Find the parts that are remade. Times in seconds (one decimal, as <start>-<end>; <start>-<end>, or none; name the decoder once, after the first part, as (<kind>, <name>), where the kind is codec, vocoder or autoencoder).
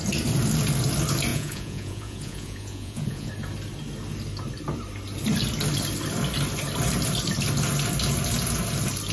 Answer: 1.3-3.3 (vocoder, Vocos)